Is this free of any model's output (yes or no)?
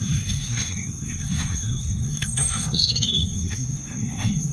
no